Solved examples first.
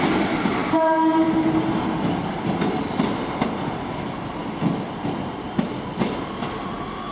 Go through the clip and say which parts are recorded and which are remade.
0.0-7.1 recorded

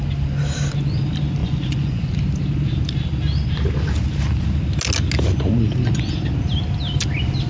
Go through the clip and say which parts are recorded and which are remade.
0.0-1.4 recorded; 1.4-2.1 remade; 2.1-7.5 recorded

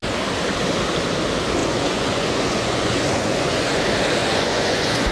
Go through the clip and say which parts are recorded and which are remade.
0.0-1.6 recorded; 1.6-3.8 remade; 3.8-4.2 recorded; 4.2-5.1 remade

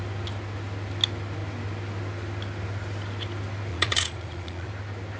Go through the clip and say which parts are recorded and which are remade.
0.0-3.7 recorded; 3.7-4.7 remade; 4.7-5.2 recorded